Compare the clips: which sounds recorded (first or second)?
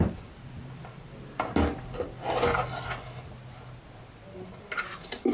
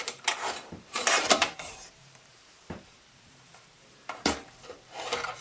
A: first